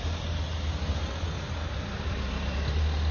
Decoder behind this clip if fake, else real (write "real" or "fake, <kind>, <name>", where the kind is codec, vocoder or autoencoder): real